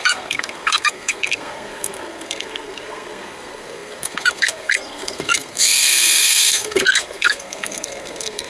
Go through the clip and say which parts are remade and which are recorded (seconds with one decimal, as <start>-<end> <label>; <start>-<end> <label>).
0.0-8.5 remade